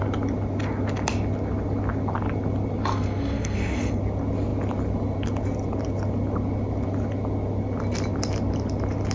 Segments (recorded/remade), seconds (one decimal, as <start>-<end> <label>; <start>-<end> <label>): 0.0-2.9 recorded; 2.9-4.0 remade; 4.0-9.1 recorded